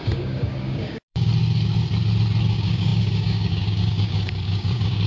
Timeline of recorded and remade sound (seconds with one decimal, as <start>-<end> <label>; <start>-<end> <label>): 0.0-1.3 remade; 1.3-2.5 recorded; 2.5-5.1 remade

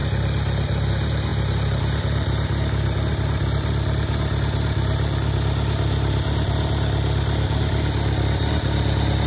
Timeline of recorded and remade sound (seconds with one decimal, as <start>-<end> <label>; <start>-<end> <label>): 0.0-9.3 recorded

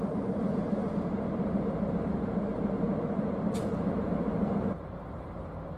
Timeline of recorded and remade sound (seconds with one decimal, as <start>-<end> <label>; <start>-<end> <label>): 0.0-4.3 remade; 4.3-5.0 recorded; 5.0-5.8 remade